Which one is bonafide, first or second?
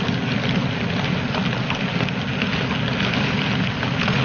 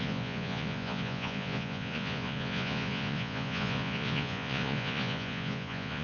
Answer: first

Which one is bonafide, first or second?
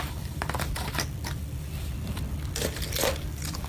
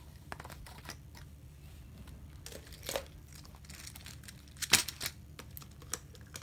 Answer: second